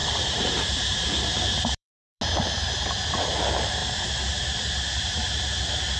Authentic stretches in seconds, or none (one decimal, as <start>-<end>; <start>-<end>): 2.2-3.8; 4.4-6.0